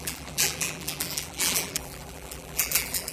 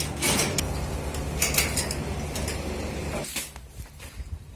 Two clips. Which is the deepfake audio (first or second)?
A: first